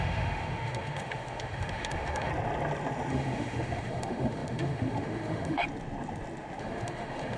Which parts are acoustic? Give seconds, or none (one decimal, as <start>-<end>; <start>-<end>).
2.3-3.1; 5.6-6.6